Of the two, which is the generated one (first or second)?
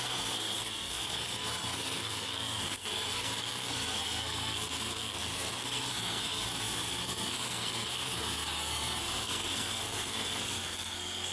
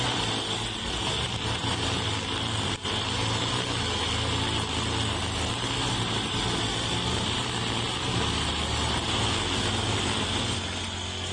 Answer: first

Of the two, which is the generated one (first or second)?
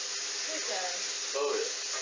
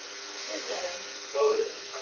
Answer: second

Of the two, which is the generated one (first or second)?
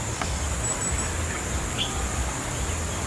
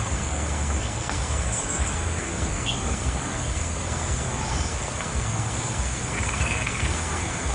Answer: second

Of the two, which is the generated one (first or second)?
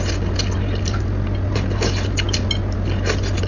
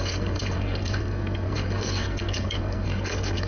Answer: second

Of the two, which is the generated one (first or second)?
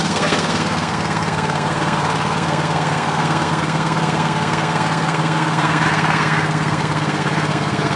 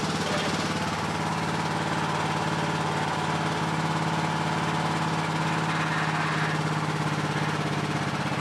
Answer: first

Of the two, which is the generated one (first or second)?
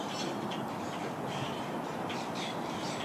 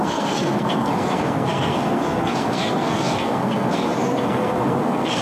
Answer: second